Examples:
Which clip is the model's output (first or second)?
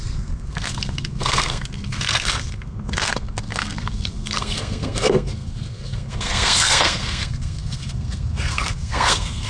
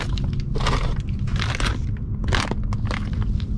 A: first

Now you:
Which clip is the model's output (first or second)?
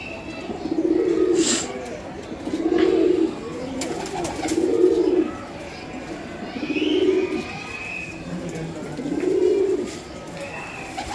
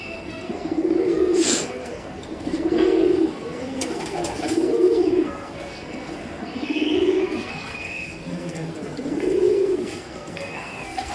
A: second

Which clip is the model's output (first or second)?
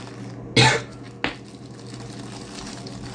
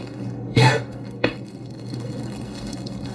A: second